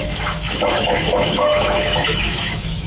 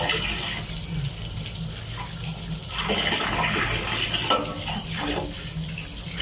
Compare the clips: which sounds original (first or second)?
second